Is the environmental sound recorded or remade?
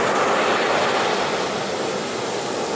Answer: remade